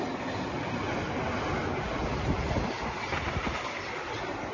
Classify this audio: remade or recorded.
recorded